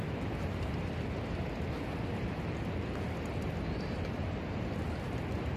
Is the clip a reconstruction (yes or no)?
no